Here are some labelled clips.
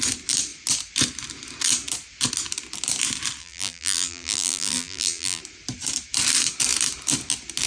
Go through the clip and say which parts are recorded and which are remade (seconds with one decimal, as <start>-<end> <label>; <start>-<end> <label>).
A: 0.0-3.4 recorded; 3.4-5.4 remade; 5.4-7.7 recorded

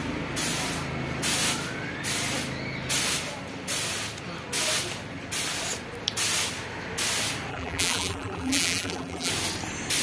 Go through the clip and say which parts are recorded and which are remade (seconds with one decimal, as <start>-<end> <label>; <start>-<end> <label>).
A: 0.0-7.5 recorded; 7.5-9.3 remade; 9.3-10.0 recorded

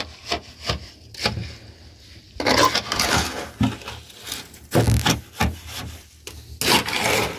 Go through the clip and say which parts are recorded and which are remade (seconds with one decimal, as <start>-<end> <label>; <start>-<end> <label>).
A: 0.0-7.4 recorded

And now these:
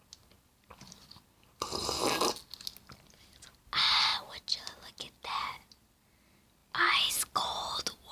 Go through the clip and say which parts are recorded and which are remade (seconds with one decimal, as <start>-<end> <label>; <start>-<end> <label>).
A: 0.0-8.1 recorded

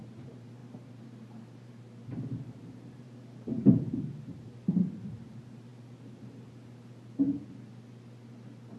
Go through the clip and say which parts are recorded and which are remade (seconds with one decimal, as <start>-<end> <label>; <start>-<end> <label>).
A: 0.0-5.7 remade; 5.7-8.8 recorded